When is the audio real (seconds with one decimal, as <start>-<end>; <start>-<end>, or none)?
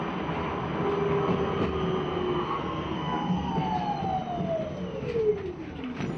0.0-2.1; 3.5-6.2